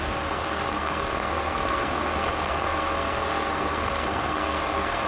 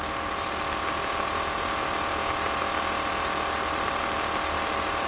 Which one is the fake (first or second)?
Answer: first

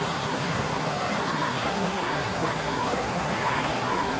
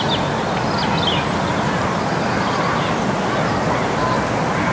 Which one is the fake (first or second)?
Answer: first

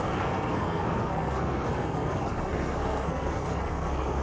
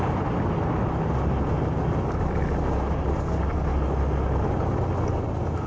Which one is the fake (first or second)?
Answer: first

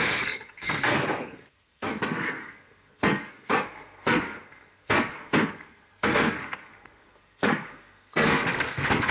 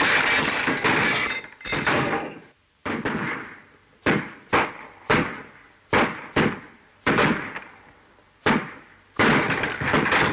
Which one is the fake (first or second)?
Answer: first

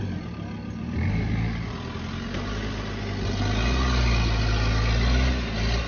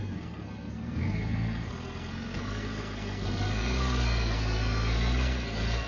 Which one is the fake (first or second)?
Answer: second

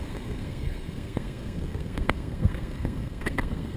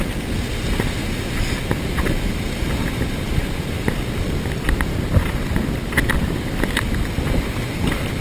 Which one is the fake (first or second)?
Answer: first